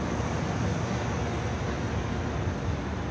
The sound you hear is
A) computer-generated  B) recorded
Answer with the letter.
B